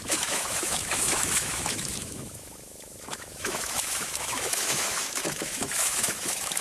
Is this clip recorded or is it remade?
remade